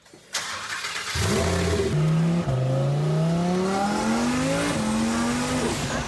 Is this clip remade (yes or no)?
no